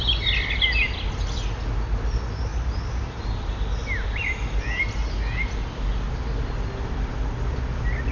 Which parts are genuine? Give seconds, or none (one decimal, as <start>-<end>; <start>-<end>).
0.0-2.5; 3.2-8.1